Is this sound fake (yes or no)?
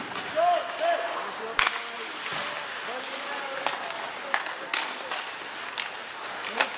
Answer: no